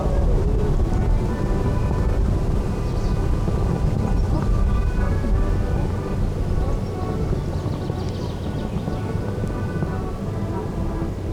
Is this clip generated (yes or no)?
no